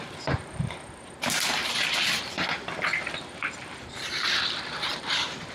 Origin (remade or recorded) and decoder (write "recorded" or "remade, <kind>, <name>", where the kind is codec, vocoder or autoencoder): remade, vocoder, BigVGAN v2